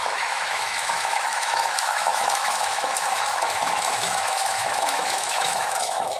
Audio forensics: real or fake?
fake